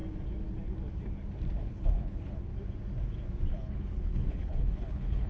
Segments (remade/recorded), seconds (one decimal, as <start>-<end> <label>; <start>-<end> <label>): 0.0-1.6 recorded; 1.6-2.5 remade; 2.5-3.5 recorded; 3.5-5.3 remade